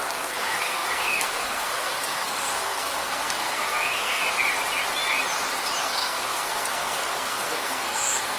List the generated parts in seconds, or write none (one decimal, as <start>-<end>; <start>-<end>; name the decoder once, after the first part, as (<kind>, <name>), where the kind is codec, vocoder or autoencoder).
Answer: 0.0-4.2 (codec, SNAC); 5.8-8.4